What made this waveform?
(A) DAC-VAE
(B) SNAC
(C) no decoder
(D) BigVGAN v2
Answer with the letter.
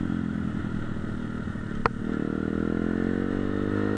C